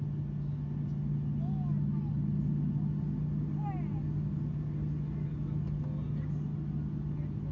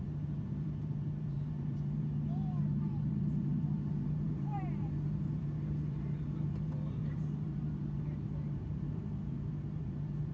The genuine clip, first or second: first